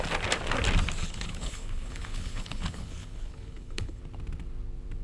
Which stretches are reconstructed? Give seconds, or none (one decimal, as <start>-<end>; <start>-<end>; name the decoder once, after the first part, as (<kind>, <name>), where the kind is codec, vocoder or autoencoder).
1.0-4.0 (codec, HILCodec)